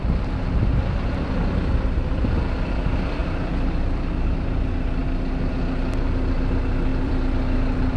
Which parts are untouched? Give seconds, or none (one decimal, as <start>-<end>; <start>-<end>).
0.0-3.2; 3.8-5.0; 5.5-6.9